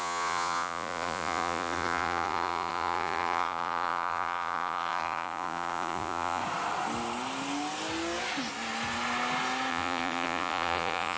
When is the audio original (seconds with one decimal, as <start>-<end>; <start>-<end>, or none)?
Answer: 6.4-9.7